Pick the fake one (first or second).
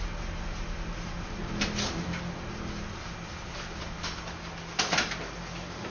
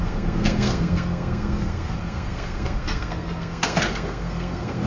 second